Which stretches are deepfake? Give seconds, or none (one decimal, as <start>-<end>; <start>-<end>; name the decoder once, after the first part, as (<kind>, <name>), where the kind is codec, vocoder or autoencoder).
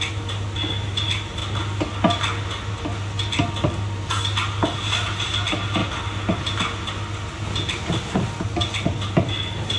none